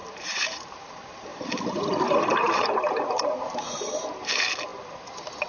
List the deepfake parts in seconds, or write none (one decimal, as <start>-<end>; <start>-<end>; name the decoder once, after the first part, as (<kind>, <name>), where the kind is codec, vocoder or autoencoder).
0.0-0.9 (vocoder, BigVGAN v2); 1.3-3.9

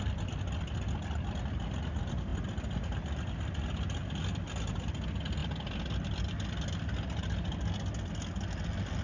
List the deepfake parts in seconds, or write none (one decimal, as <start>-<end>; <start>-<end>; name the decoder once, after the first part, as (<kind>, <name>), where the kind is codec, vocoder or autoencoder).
none

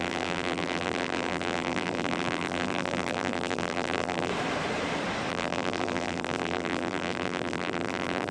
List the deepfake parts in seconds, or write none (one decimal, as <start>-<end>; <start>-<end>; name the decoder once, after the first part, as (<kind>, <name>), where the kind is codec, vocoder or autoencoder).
0.0-4.3 (vocoder, BigVGAN v2); 5.3-8.3

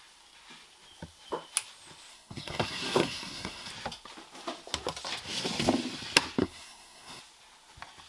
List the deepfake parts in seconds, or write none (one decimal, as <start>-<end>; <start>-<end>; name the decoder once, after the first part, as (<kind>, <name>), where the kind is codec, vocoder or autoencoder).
2.1-3.7 (codec, SNAC); 6.4-7.2

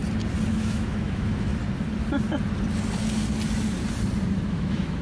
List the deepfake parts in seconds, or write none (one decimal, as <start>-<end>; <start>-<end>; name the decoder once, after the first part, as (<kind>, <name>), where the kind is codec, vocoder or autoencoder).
0.5-1.5 (autoencoder, DAC-VAE); 4.5-5.0

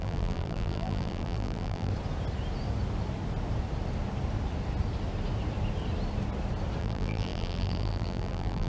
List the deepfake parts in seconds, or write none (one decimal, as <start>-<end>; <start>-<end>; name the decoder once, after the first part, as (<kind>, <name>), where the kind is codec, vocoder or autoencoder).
0.0-1.9 (vocoder, BigVGAN v2); 6.8-8.7

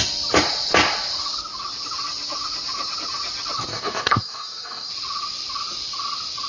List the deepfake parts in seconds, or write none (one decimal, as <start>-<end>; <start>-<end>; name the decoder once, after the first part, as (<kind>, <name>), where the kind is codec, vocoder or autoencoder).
3.7-4.9 (codec, DAC)